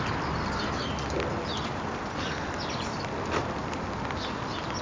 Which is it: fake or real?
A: real